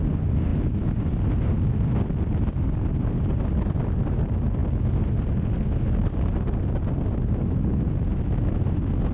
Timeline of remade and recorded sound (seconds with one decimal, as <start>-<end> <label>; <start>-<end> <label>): 0.0-9.1 recorded